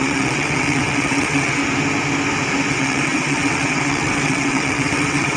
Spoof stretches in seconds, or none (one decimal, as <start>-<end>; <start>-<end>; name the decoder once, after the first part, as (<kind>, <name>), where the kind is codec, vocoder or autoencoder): 0.0-1.6 (vocoder, WaveNeXt); 2.7-5.4